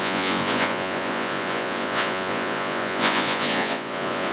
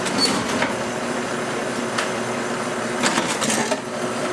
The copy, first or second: first